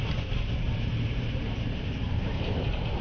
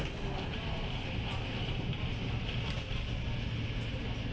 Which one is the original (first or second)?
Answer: second